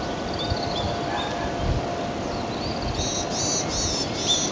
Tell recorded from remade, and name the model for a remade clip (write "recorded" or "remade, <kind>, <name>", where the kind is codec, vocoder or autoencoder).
recorded